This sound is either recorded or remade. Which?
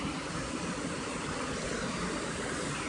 recorded